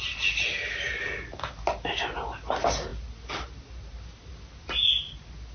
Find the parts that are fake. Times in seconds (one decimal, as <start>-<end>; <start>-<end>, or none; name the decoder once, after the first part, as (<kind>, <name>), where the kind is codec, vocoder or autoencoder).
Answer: none